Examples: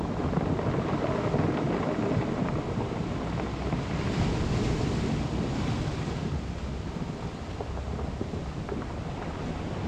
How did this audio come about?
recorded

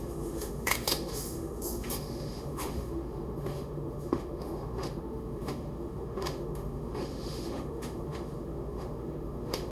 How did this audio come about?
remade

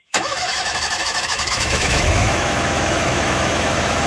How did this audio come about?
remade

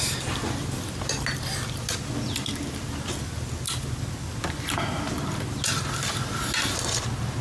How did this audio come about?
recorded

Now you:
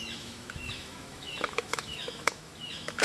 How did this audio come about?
remade